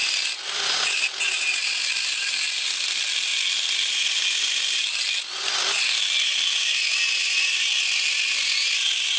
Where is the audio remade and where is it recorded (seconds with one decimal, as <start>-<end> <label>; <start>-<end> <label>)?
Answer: 0.0-9.2 recorded